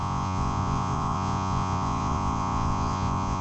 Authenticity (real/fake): fake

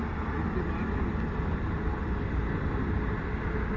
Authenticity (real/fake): real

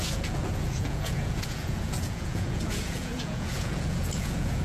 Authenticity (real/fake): fake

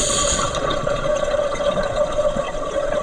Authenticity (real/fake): fake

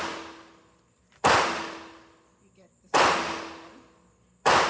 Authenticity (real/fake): real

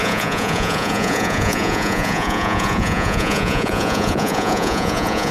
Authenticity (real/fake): fake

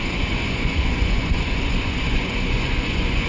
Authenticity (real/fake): fake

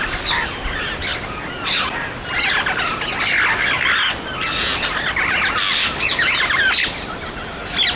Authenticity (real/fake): real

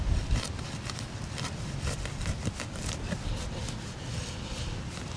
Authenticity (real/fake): real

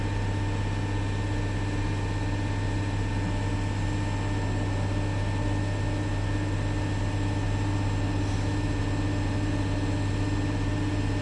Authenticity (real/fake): real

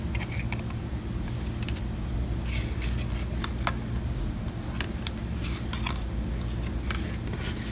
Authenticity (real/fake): real